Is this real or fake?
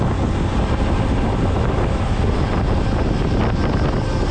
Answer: real